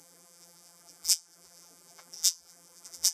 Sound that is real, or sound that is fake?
fake